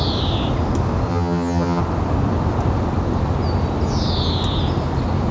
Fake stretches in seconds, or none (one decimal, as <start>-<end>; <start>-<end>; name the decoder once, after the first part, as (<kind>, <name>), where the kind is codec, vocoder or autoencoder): 1.1-1.8 (vocoder, HiFi-GAN)